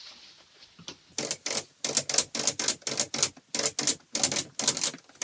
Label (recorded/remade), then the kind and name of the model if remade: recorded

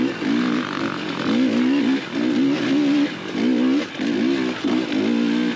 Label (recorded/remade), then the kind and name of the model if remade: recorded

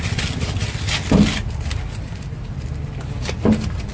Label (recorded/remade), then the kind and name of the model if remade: recorded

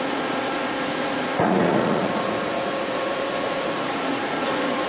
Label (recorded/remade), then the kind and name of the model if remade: remade, vocoder, Vocos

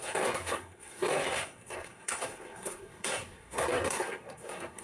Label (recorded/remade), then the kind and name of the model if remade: remade, codec, SNAC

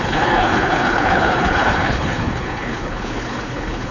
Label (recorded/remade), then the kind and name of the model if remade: remade, codec, HILCodec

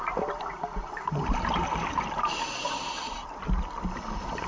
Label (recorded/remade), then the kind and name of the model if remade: recorded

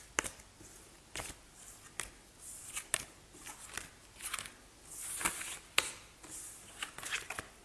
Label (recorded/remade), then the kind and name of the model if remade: recorded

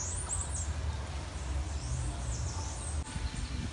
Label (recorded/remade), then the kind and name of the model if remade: recorded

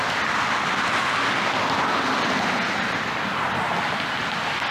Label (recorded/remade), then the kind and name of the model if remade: recorded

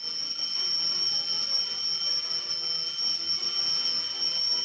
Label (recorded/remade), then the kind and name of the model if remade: recorded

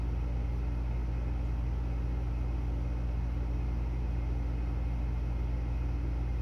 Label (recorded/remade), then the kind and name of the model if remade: recorded